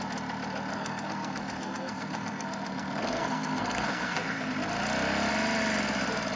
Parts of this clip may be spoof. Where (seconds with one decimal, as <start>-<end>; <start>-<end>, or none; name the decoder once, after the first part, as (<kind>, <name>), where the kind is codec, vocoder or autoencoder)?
0.7-4.5 (codec, SNAC)